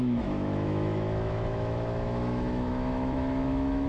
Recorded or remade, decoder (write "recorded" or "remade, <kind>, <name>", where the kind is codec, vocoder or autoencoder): remade, autoencoder, DAC-VAE